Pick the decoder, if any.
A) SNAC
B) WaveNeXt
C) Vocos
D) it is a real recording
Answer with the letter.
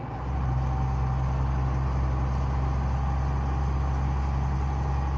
D